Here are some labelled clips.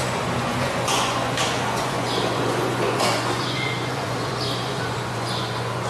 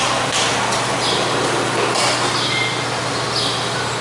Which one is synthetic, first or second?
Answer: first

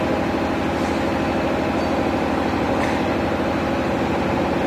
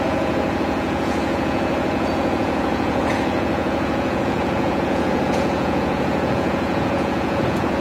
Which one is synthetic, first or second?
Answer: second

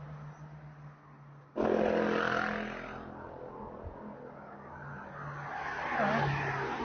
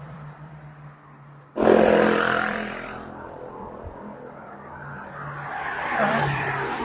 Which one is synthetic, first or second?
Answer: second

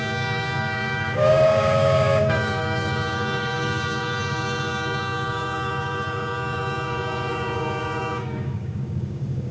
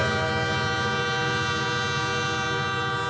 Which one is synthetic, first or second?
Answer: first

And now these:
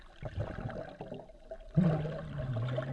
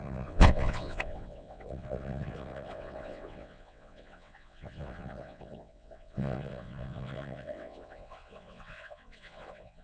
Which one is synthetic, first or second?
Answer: second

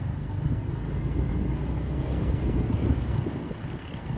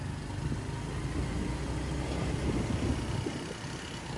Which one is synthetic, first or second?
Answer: first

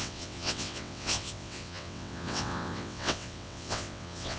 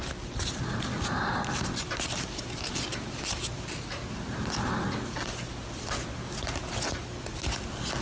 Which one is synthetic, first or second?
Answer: first